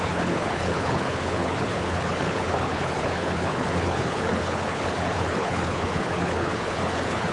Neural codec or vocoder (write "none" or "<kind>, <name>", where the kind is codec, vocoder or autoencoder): codec, HILCodec